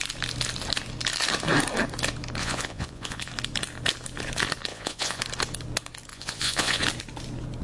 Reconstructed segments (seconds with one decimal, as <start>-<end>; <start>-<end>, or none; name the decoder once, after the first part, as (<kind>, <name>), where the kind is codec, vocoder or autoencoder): 2.4-3.3 (vocoder, Vocos); 4.7-5.2; 6.1-6.8